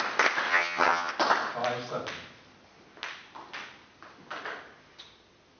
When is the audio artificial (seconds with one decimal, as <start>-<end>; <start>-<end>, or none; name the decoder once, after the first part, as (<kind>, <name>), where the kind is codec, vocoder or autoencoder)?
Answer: 0.5-1.1 (vocoder, HiFi-GAN)